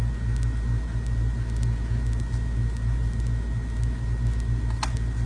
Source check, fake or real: real